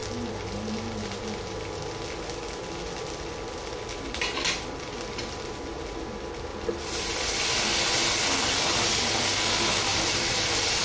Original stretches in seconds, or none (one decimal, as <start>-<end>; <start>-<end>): 0.0-6.5; 7.6-9.9